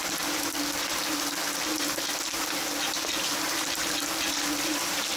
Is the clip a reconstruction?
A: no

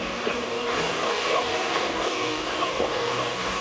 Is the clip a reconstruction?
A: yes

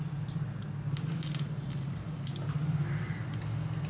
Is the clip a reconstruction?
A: no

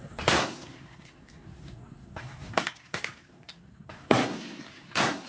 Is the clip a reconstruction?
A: yes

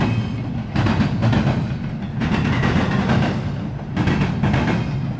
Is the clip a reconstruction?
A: no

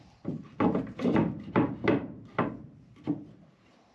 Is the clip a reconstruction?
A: no